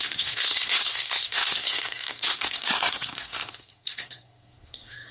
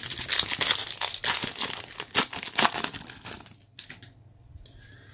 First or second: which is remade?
first